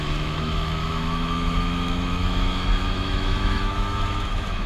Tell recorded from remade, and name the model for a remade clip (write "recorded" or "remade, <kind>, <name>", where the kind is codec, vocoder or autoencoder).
remade, autoencoder, DAC-VAE